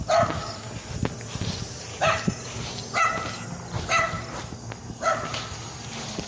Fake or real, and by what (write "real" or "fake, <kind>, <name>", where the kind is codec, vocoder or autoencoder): real